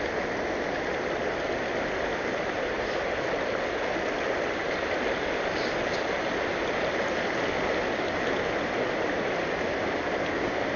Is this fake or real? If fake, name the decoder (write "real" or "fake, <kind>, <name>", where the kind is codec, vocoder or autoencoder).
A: real